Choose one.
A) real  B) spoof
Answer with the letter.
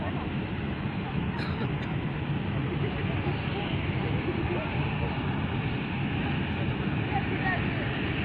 A